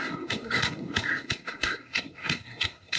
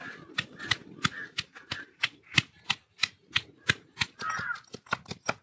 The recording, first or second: second